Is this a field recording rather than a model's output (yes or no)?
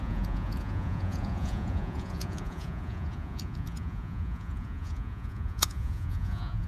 no